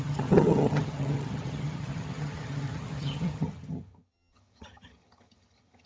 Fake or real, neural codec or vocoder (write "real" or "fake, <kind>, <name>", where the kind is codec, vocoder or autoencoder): fake, vocoder, HiFi-GAN